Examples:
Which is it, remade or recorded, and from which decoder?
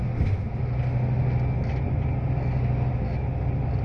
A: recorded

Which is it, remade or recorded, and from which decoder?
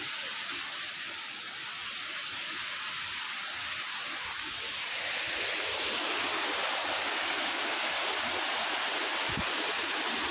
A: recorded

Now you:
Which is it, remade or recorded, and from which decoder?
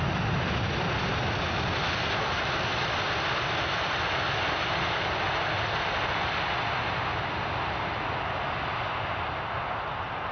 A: recorded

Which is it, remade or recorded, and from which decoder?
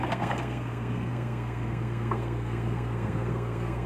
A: remade, codec, SNAC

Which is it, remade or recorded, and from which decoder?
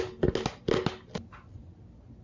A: recorded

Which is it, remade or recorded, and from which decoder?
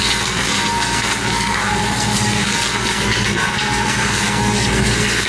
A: remade, codec, SNAC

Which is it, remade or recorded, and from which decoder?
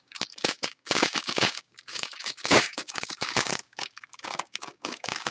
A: remade, codec, DAC